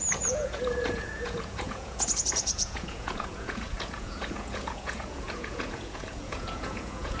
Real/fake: fake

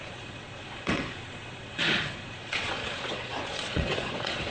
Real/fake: fake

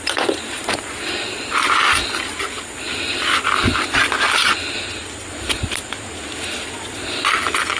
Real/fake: real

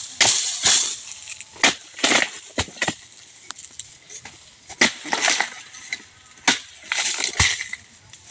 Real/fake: real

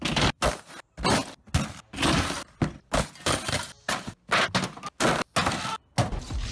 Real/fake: real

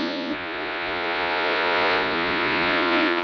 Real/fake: fake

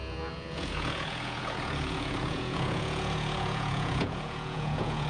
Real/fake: fake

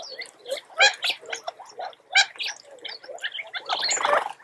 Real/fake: real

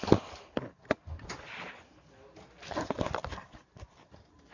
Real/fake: real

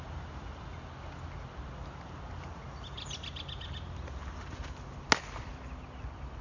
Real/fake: real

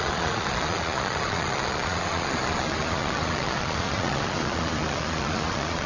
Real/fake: fake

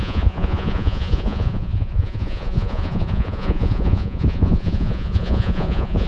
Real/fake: fake